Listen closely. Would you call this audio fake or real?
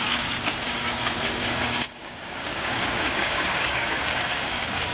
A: fake